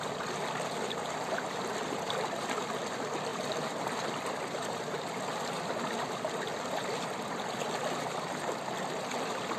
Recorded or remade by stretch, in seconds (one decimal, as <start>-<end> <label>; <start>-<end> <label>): 0.0-9.6 recorded